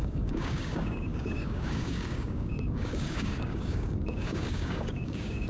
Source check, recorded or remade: remade